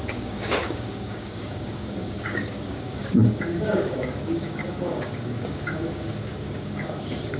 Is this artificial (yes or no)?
yes